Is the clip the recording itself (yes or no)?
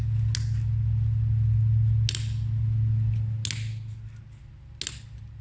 yes